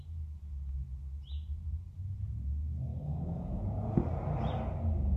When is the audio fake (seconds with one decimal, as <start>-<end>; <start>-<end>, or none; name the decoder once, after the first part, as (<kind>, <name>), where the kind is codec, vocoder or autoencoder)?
2.9-3.6 (codec, DAC)